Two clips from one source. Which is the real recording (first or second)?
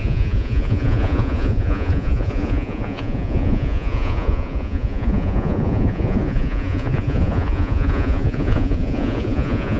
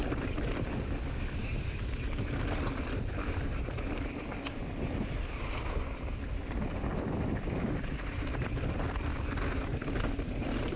second